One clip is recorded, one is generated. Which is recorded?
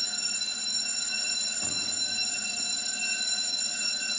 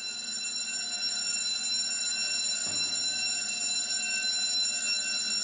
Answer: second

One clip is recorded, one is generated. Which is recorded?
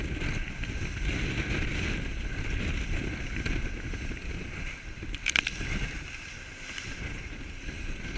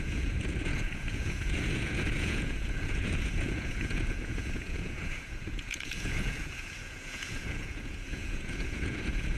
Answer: first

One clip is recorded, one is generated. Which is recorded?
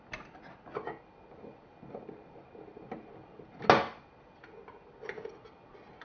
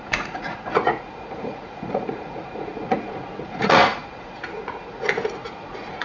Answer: first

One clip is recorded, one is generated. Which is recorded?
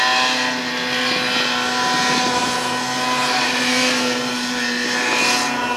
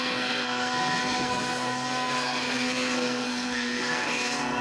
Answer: first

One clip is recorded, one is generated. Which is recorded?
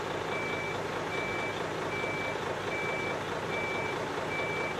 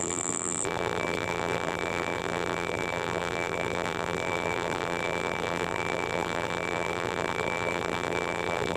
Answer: first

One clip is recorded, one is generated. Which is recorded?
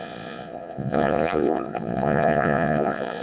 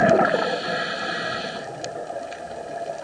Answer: second